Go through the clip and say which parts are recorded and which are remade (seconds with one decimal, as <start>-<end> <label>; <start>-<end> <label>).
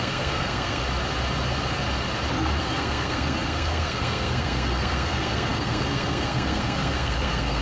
0.0-0.8 remade; 0.8-2.6 recorded; 2.6-7.6 remade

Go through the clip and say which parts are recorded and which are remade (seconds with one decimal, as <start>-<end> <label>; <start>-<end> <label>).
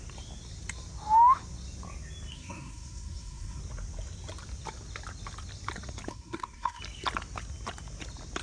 0.0-2.3 recorded; 2.3-3.6 remade; 3.6-6.1 recorded; 6.1-6.8 remade; 6.8-8.4 recorded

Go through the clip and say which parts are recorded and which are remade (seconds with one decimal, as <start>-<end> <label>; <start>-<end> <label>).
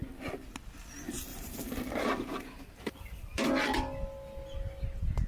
0.0-1.3 recorded; 1.3-3.6 remade; 3.6-5.3 recorded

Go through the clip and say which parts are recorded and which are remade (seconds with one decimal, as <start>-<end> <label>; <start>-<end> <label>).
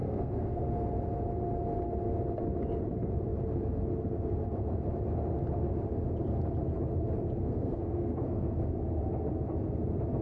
0.0-0.6 remade; 0.6-7.4 recorded; 7.4-8.6 remade; 8.6-10.2 recorded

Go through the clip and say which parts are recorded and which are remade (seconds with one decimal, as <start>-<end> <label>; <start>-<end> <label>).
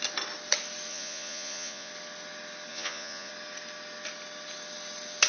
0.0-0.9 recorded; 0.9-1.9 remade; 1.9-2.7 recorded; 2.7-3.3 remade; 3.3-5.3 recorded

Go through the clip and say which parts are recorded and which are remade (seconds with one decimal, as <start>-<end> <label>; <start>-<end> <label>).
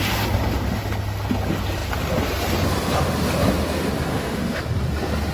0.0-4.1 recorded; 4.1-4.6 remade; 4.6-5.3 recorded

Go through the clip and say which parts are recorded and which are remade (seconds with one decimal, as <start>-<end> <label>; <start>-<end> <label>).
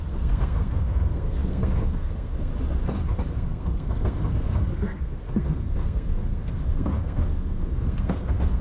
0.0-2.5 remade; 2.5-3.3 recorded; 3.3-8.6 remade